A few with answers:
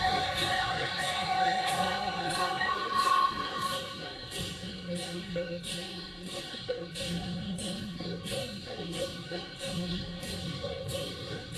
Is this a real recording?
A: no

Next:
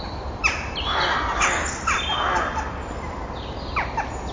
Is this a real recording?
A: yes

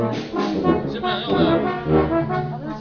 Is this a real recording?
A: yes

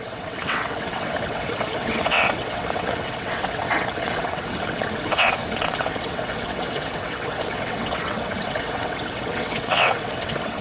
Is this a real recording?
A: no